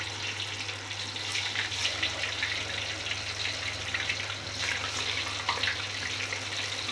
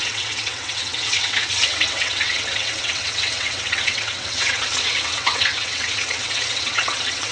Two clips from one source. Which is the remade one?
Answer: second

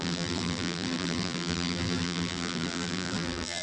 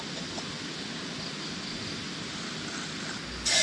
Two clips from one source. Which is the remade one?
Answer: first